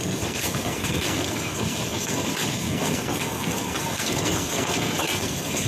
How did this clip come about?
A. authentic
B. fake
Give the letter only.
B